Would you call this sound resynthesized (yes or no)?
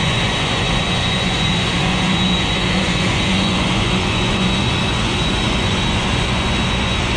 yes